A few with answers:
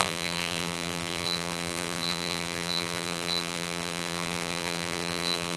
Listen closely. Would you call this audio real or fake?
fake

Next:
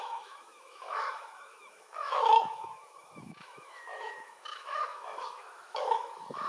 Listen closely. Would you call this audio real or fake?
fake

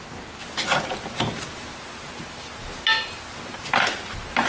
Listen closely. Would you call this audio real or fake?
real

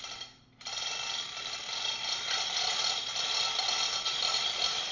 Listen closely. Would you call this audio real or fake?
real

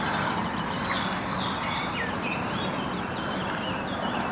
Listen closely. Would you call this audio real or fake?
real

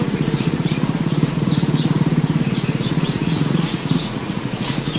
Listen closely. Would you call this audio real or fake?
fake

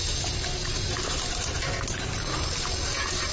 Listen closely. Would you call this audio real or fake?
real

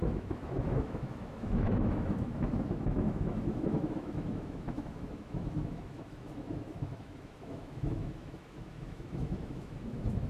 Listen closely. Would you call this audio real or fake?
fake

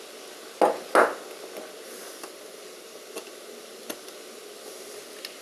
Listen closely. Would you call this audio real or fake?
real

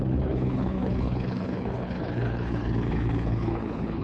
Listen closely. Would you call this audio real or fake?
fake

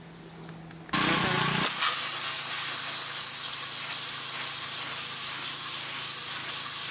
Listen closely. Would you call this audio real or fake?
real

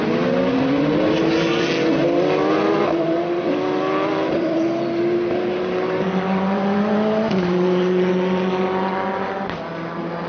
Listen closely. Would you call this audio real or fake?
real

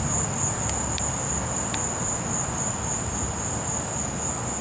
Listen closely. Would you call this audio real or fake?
real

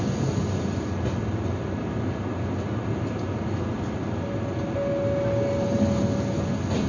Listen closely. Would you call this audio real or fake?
real